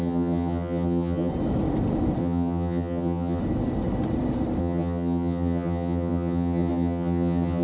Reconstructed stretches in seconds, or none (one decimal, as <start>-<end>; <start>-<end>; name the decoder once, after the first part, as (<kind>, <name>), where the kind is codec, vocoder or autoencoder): 0.0-1.3 (vocoder, HiFi-GAN); 2.2-3.4; 4.6-7.6